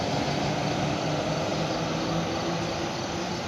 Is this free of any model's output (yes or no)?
no